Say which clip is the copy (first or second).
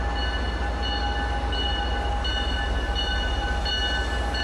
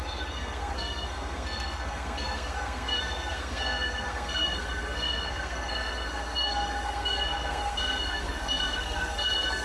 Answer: second